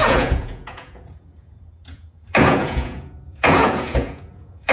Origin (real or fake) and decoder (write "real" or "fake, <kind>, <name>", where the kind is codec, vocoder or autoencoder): fake, vocoder, Vocos